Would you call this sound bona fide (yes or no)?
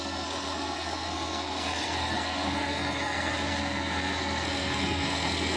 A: no